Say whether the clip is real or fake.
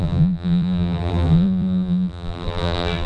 fake